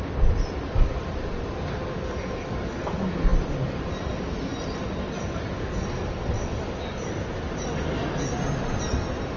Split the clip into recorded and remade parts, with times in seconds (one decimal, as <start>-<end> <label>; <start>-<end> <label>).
0.0-9.4 recorded